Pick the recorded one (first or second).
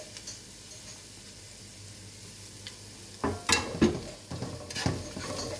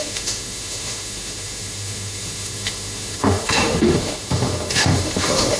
first